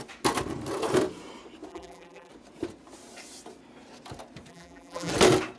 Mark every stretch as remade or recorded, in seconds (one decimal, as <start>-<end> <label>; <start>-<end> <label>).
0.0-1.7 recorded; 1.7-2.3 remade; 2.3-4.5 recorded; 4.5-5.1 remade; 5.1-5.6 recorded